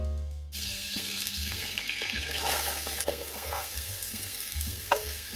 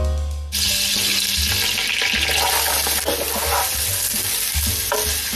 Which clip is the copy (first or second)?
first